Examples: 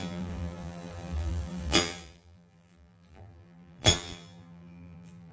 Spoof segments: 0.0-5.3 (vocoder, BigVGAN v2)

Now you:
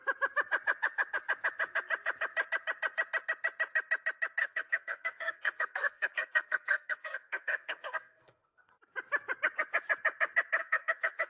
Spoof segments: 4.4-8.7 (codec, SNAC); 10.6-11.3

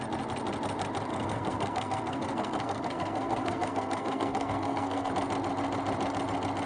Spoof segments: 1.1-5.1 (codec, SNAC)

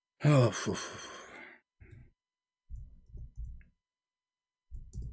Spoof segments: none

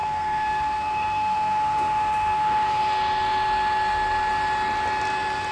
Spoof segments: 0.0-2.8 (codec, SNAC)

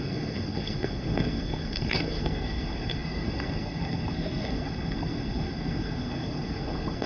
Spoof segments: 0.0-7.1 (codec, SNAC)

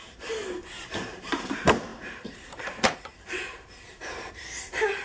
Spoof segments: 0.0-5.0 (vocoder, BigVGAN v2)

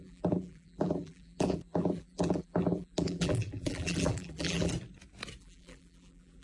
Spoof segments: 0.0-4.7 (vocoder, BigVGAN v2); 5.4-6.4